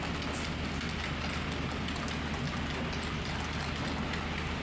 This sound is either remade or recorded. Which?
recorded